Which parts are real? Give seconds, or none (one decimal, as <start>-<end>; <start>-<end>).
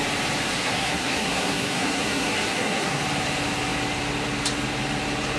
0.0-0.5; 3.0-5.4